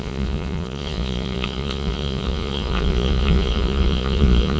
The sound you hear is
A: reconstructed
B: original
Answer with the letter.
A